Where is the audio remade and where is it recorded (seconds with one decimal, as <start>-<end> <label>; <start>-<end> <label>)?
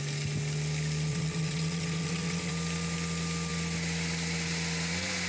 0.0-1.1 recorded; 1.1-2.5 remade; 2.5-5.3 recorded